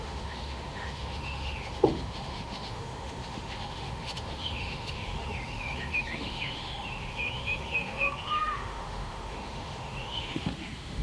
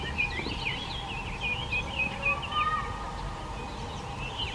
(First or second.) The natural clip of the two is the second